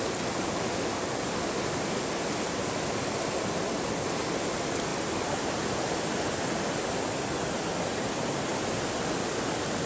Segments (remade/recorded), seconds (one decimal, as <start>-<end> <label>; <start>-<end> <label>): 0.0-9.9 recorded